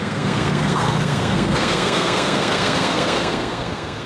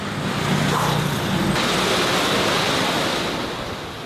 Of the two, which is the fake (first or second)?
first